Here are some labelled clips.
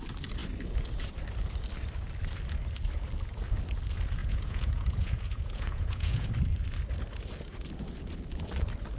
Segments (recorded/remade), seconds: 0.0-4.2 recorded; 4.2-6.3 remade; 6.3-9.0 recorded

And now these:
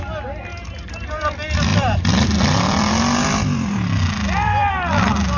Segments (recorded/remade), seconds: 0.0-0.5 recorded; 0.5-1.0 remade; 1.0-1.7 recorded; 1.7-4.7 remade; 4.7-5.4 recorded

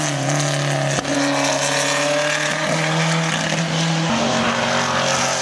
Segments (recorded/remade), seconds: 0.0-5.4 recorded

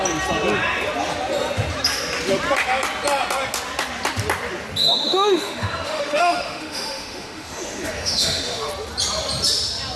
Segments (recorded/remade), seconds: 0.0-4.8 recorded; 4.8-8.7 remade; 8.7-10.0 recorded